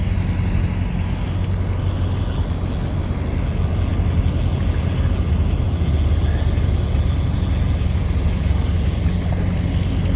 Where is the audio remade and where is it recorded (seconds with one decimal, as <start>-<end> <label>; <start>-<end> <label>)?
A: 0.0-10.2 recorded